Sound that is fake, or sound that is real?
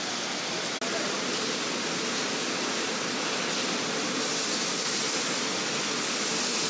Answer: real